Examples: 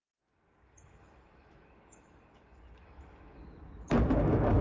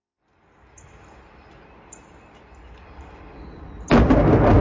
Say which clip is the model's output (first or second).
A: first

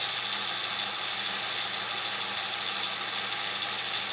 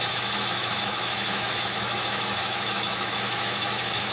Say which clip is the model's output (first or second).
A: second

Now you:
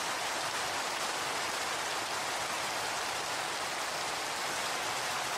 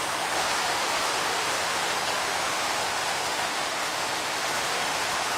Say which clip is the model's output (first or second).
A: second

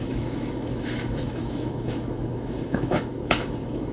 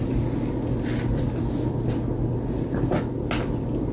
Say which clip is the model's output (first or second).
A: first